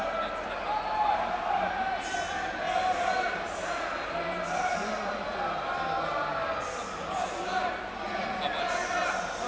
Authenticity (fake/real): real